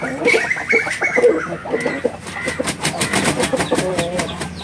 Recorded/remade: recorded